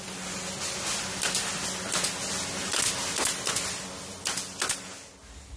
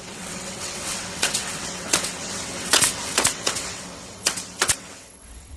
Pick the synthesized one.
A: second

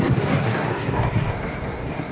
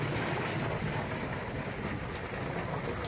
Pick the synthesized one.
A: first